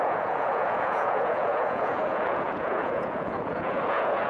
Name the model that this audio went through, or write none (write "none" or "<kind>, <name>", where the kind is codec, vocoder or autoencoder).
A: vocoder, Vocos